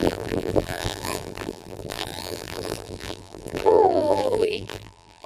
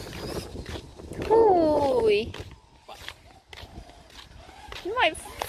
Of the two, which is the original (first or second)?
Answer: second